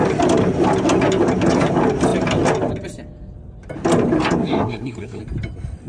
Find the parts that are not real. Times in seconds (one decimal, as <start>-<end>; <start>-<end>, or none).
4.4-5.2